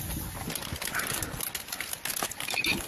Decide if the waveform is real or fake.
real